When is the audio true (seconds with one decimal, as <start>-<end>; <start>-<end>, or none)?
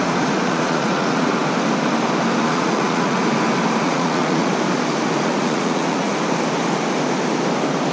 1.3-2.4; 3.2-3.8; 4.5-5.2; 6.1-7.9